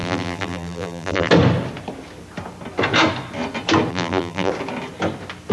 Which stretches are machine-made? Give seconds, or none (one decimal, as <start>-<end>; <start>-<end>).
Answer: 0.0-1.3; 3.9-4.5

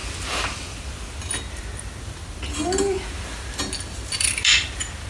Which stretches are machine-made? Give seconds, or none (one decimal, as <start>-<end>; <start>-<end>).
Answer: none